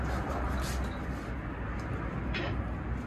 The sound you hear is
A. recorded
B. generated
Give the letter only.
A